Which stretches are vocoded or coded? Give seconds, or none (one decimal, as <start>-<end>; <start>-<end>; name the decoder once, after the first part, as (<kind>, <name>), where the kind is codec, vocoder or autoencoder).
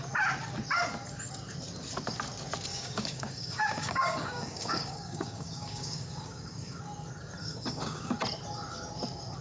2.7-6.8 (codec, DAC); 7.4-8.1